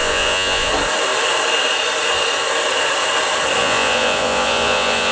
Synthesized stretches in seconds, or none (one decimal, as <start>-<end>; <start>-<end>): 0.0-0.7; 3.6-5.1